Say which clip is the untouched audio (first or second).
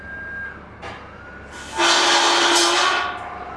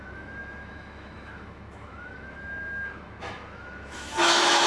first